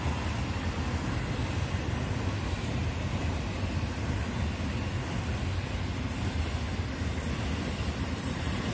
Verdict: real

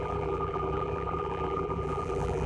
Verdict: fake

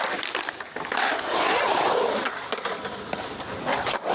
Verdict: fake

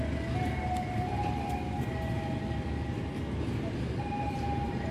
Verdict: real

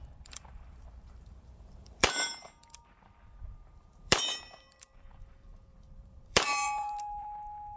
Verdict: fake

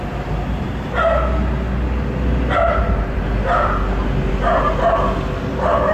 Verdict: fake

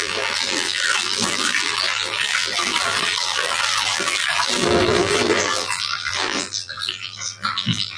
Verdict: fake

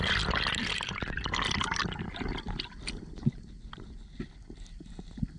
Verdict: real